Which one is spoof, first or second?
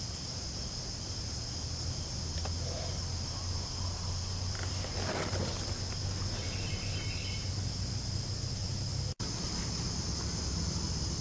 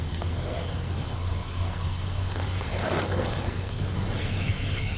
second